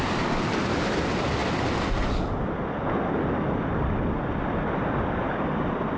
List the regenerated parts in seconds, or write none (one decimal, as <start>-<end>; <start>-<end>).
none